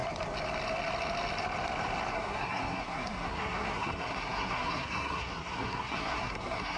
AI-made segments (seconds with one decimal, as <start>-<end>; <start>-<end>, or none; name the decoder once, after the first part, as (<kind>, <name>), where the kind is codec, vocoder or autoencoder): 2.1-6.8 (codec, SNAC)